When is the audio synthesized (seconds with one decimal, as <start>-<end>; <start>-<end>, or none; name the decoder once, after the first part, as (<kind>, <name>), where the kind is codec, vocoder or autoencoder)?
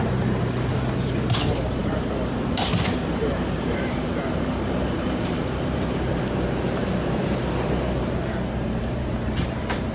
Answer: 0.0-9.9 (vocoder, BigVGAN v2)